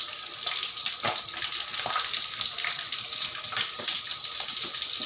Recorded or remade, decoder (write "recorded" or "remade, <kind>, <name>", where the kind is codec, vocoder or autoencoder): recorded